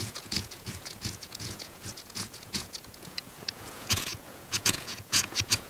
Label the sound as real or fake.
fake